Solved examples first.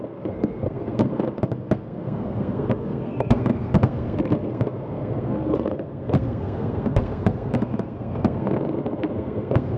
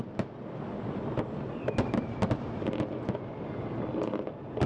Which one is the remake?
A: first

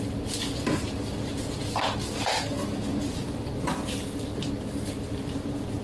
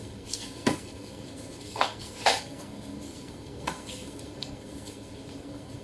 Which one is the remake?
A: second